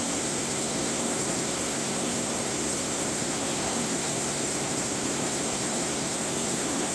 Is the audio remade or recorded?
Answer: remade